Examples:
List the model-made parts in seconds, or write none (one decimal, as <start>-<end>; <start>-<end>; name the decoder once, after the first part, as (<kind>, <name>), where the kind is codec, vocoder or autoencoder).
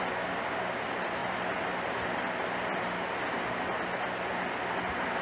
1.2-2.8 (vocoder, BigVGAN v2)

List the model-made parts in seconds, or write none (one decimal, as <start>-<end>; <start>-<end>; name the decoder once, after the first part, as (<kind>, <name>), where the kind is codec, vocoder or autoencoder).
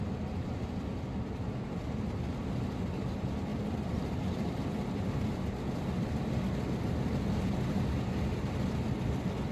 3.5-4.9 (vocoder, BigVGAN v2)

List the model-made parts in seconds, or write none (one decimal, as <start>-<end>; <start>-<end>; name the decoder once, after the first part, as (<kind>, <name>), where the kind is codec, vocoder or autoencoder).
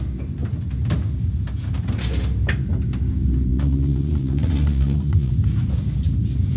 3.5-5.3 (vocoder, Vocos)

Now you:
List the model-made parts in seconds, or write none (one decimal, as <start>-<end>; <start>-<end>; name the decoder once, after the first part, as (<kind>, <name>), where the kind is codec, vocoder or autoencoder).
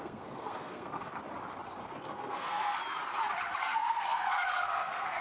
0.0-1.1 (codec, SNAC); 1.8-2.8; 3.6-5.2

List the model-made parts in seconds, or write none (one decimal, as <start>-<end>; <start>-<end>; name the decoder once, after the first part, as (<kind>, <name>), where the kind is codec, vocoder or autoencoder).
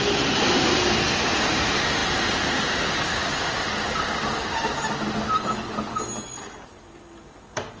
none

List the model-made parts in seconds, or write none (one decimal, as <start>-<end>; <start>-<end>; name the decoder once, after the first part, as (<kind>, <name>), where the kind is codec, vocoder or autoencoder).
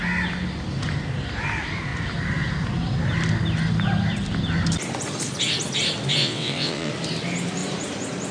6.2-6.9 (vocoder, WaveNeXt)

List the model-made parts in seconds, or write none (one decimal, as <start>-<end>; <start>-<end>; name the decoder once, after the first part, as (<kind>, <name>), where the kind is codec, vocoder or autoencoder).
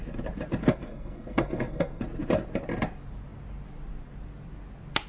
0.6-2.0 (codec, SNAC)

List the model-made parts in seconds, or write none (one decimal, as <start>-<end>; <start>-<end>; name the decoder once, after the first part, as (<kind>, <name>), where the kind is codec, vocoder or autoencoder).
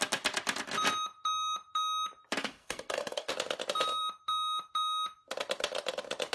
2.4-3.3 (codec, SNAC)